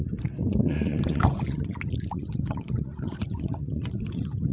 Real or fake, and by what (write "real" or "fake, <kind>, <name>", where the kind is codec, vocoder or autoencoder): fake, vocoder, Vocos